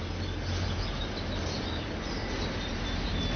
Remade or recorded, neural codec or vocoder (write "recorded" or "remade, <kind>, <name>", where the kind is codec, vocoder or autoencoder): recorded